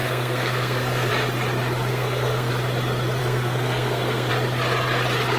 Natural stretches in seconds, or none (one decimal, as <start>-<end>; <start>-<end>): 1.1-1.9; 2.5-3.2; 4.3-5.4